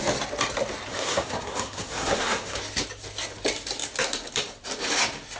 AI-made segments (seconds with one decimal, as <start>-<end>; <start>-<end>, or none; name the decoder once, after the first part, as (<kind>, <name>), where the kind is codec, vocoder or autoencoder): 0.9-2.6 (codec, SNAC)